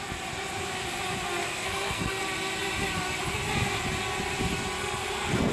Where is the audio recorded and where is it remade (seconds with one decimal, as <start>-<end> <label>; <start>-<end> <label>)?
0.0-1.4 recorded; 1.4-2.2 remade; 2.2-4.8 recorded; 4.8-5.5 remade